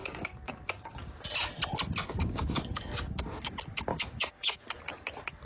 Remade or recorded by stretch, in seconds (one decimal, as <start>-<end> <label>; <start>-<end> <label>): 0.0-1.2 remade; 1.2-2.0 recorded; 2.0-3.5 remade; 3.5-3.9 recorded; 3.9-4.6 remade; 4.6-5.5 recorded